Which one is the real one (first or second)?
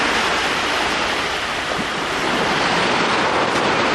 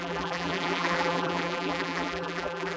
first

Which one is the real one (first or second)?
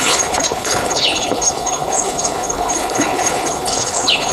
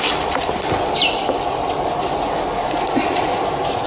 second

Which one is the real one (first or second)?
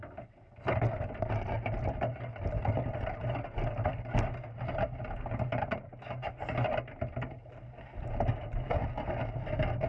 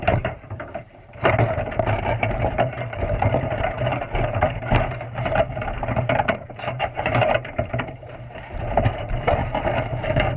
first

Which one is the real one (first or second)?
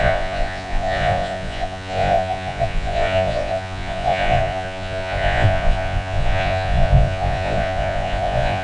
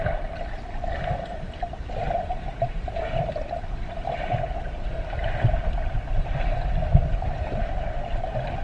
second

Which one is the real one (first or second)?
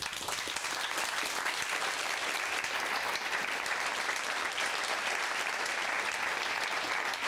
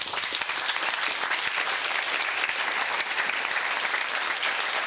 first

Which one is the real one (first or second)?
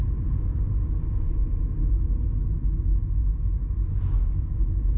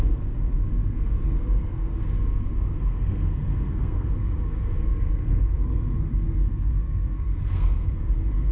first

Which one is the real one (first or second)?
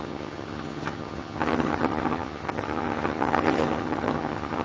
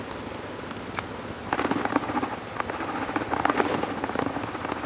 second